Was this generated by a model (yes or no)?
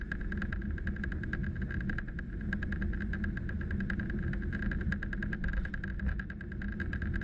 no